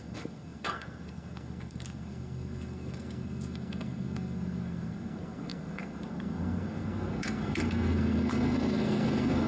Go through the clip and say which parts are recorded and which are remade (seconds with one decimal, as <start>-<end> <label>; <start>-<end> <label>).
0.0-9.5 remade